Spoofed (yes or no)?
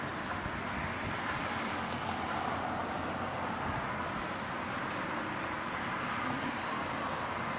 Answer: no